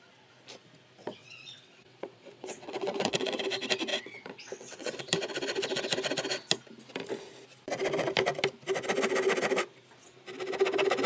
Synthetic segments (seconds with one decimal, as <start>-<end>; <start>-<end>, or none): 1.0-3.4; 3.9-5.0

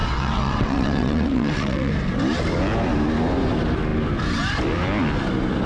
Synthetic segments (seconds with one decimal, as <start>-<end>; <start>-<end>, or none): 0.0-1.9

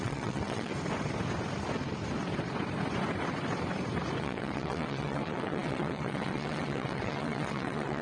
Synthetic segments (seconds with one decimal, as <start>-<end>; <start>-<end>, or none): 0.0-0.7; 4.2-8.0

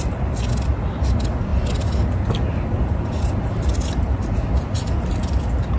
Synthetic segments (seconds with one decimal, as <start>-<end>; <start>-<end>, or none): none

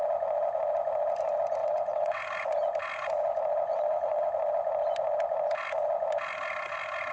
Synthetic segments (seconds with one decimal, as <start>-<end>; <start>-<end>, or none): 1.6-2.2; 3.7-4.3

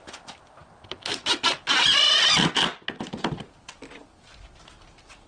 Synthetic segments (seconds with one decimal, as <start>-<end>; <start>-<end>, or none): none

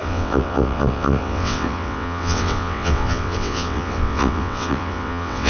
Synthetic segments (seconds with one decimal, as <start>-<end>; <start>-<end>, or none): 0.0-5.5